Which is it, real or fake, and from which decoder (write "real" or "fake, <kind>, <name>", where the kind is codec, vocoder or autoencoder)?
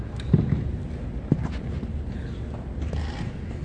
real